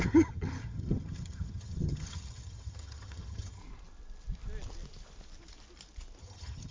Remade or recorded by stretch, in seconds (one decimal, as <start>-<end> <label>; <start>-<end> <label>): 0.0-3.6 remade; 3.6-6.2 recorded; 6.2-6.7 remade